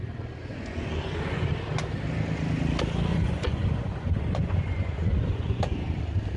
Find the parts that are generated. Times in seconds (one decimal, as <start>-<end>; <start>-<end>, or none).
0.4-1.5; 3.1-6.0